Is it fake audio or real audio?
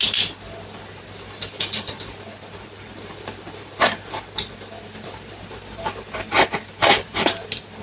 real